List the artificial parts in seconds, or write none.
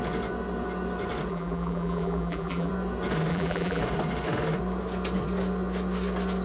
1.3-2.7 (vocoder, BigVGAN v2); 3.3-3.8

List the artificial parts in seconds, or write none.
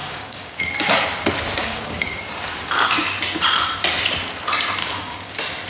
0.0-0.6 (codec, DAC); 1.6-2.2; 4.8-5.3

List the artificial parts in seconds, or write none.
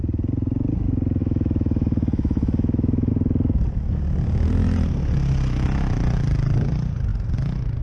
1.2-3.1 (autoencoder, DAC-VAE)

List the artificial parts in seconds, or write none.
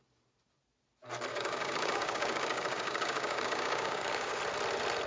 1.3-4.4 (codec, DAC)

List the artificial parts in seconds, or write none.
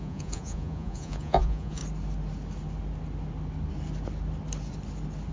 0.0-1.8 (vocoder, Vocos)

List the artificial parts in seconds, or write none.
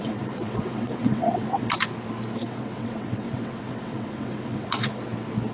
0.0-1.7 (vocoder, WaveNeXt); 2.4-5.0